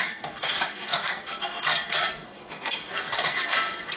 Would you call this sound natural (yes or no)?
no